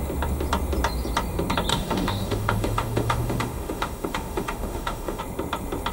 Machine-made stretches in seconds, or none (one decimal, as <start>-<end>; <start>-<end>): 1.7-5.2